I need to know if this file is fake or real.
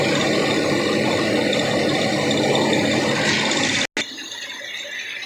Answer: real